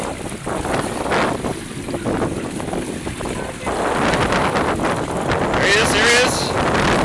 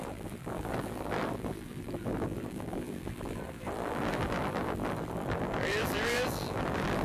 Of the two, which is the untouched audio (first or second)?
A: first